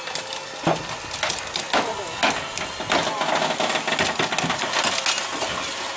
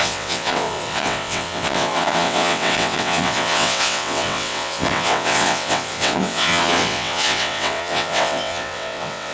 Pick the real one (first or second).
first